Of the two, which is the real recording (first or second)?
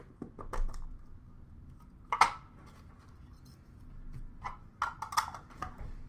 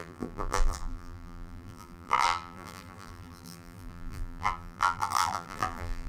first